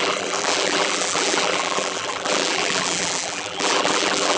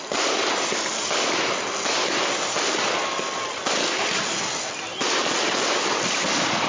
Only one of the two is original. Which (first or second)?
second